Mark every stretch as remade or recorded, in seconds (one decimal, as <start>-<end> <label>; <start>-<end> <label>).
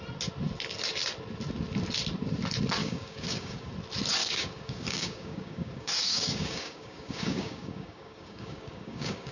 0.0-2.8 recorded; 2.8-3.7 remade; 3.7-4.2 recorded; 4.2-9.3 remade